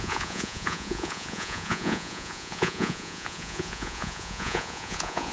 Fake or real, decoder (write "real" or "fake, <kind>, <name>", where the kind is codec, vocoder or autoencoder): fake, vocoder, Vocos